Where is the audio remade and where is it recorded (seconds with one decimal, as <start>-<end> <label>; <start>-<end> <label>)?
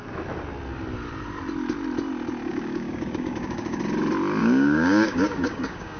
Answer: 0.0-2.5 recorded; 2.5-3.8 remade; 3.8-4.4 recorded; 4.4-6.0 remade